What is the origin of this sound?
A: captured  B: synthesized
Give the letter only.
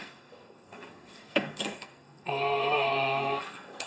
B